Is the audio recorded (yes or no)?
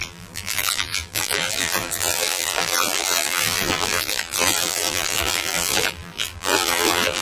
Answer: no